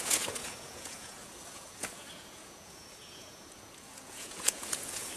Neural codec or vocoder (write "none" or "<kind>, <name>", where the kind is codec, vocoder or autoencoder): vocoder, Vocos